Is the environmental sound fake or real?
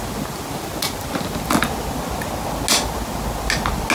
real